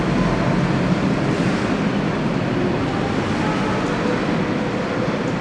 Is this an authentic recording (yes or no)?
yes